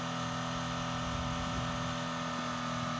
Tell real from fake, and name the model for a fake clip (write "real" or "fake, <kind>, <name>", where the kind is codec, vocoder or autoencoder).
real